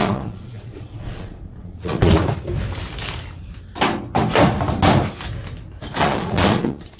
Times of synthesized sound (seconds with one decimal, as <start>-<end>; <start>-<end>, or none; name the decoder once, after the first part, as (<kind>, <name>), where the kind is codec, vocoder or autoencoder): 0.0-2.2 (vocoder, Vocos); 6.0-7.0

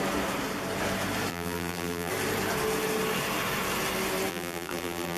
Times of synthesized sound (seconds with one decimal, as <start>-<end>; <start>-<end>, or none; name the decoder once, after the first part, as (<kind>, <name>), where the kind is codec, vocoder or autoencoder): 1.3-2.1 (vocoder, BigVGAN v2); 4.3-5.2

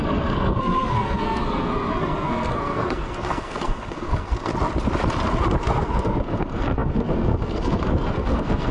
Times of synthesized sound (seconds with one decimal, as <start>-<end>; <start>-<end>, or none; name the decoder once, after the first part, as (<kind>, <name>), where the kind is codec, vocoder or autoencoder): 0.0-4.5 (codec, SNAC); 5.6-8.7